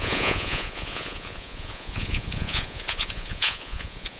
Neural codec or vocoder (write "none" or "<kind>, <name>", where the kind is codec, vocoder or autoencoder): vocoder, Vocos